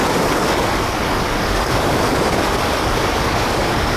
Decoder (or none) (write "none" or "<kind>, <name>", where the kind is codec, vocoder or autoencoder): codec, DAC